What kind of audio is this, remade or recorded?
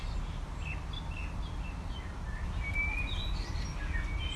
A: recorded